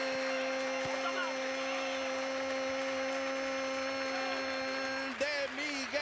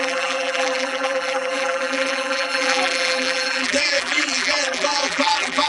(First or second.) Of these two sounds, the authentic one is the first